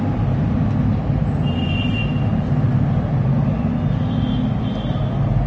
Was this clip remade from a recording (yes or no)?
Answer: no